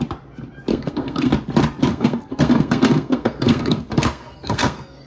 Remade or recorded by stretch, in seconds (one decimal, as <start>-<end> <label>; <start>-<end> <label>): 0.0-0.7 recorded; 0.7-1.3 remade; 1.3-1.9 recorded; 1.9-5.1 remade